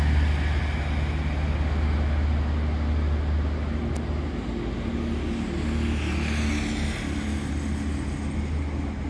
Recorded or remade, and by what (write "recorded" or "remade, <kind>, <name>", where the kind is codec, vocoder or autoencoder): recorded